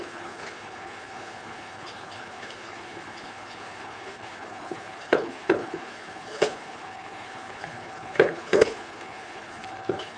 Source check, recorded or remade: remade